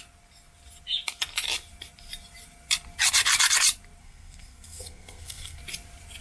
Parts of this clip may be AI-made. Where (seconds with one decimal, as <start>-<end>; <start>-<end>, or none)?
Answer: 4.0-5.6